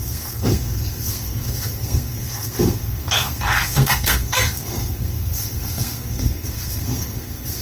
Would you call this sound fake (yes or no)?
yes